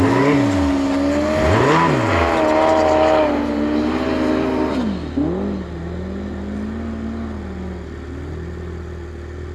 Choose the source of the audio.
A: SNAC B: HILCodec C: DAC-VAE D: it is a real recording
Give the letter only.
D